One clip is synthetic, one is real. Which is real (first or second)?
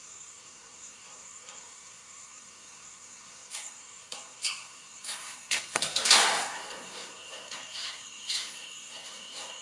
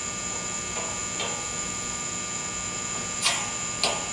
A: second